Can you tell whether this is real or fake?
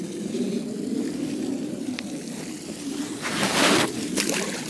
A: real